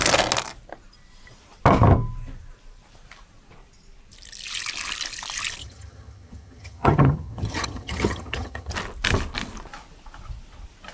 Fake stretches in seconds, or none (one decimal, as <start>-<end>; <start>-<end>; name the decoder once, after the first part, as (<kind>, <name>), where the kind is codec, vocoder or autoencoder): 5.6-8.7 (vocoder, HiFi-GAN)

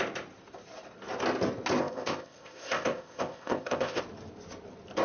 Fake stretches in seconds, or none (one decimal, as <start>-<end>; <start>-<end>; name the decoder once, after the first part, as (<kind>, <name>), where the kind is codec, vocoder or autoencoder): 1.8-4.0 (codec, ZipCodec)

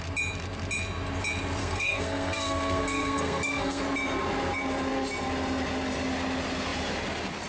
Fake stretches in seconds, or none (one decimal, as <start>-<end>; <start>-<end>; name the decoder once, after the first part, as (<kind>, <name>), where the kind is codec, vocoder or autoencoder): 1.6-3.8 (codec, SNAC)

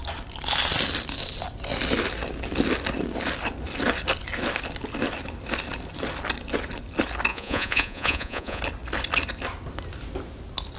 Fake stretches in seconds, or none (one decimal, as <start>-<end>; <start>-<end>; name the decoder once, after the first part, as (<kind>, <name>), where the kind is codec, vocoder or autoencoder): 7.3-8.6 (vocoder, Vocos)

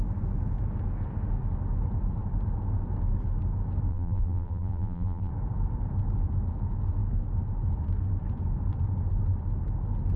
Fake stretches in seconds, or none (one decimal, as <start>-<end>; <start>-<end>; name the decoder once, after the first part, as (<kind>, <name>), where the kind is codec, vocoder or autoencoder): 3.9-5.3 (vocoder, BigVGAN v2)

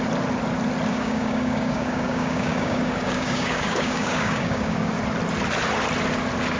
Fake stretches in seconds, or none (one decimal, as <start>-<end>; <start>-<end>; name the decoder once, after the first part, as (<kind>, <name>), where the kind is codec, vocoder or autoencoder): 0.9-4.9 (codec, DAC)

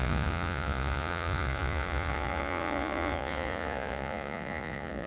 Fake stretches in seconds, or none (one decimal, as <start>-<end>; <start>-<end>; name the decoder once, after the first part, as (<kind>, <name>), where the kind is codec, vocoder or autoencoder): 0.0-5.1 (vocoder, Vocos)

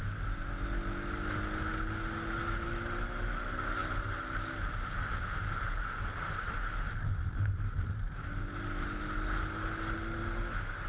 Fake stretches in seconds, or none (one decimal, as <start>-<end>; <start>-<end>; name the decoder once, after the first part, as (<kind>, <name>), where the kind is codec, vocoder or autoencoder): none